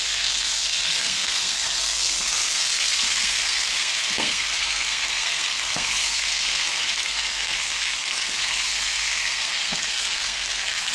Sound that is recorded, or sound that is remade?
remade